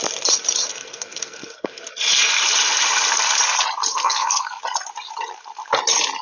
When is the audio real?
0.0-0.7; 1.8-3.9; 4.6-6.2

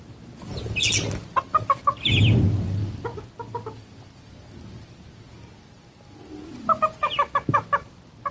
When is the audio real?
0.0-8.3

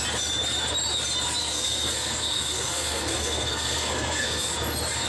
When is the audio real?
0.0-1.4; 4.5-5.1

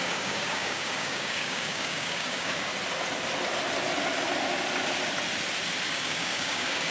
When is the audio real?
2.7-5.9

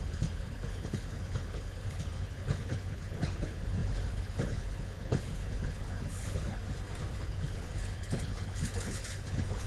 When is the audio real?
6.6-7.1

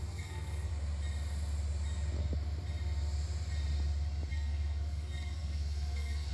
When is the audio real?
0.7-4.3

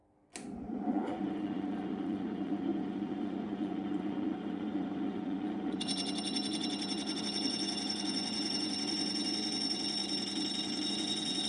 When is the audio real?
0.0-0.9; 10.0-10.9

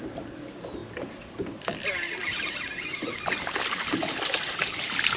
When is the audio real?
0.0-5.2